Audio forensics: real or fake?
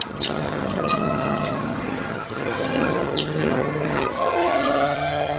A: fake